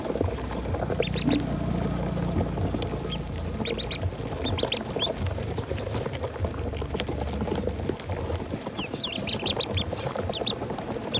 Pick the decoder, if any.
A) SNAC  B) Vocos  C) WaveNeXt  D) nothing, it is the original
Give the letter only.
D